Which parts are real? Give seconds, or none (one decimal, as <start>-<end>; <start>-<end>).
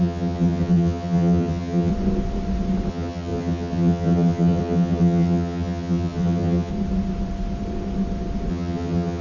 1.9-2.9; 6.7-8.5